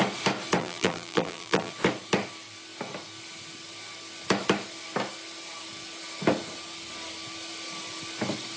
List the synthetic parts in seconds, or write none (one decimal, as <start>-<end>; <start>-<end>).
0.6-1.7